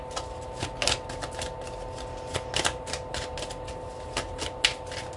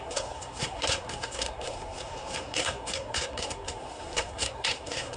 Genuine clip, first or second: first